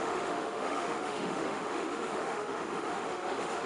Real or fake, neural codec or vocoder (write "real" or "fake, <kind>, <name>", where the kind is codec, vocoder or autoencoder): fake, autoencoder, DAC-VAE